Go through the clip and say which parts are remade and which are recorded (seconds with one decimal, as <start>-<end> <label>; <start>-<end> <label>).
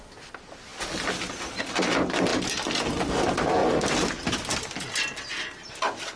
0.0-6.2 recorded